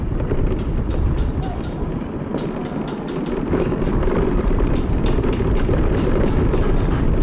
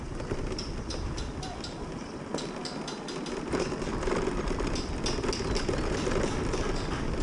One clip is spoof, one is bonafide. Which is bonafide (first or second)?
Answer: second